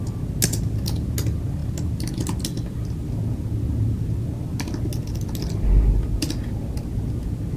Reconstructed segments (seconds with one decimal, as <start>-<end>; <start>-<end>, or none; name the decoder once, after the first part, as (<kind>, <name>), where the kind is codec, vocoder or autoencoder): none